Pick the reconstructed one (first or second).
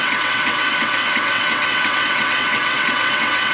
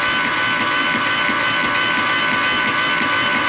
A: first